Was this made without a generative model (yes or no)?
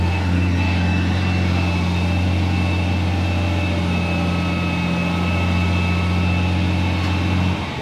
yes